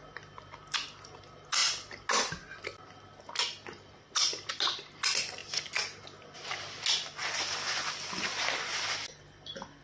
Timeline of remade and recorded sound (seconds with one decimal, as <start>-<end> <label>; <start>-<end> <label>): 0.0-9.8 recorded